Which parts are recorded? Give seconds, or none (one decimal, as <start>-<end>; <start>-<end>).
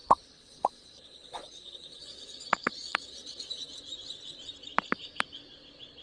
3.6-6.0